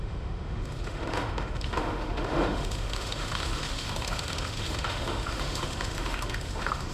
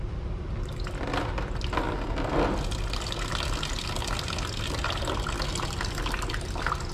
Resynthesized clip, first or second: first